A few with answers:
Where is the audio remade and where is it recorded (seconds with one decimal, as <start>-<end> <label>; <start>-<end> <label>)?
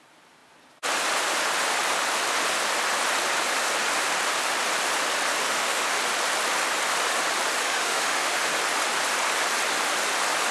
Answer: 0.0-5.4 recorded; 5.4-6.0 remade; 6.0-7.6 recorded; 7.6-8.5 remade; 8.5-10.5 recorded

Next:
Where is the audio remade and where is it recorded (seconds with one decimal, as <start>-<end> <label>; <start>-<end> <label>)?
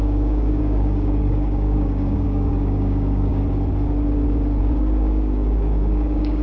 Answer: 0.0-3.4 remade; 3.4-4.6 recorded; 4.6-6.4 remade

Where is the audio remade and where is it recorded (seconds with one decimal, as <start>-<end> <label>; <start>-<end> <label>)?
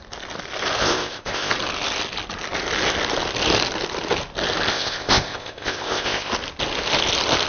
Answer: 0.0-0.8 recorded; 0.8-1.5 remade; 1.5-4.7 recorded; 4.7-6.3 remade; 6.3-7.5 recorded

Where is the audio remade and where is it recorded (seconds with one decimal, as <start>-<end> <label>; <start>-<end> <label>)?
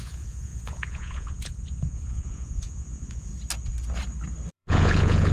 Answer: 0.0-3.3 remade; 3.3-4.5 recorded; 4.5-5.3 remade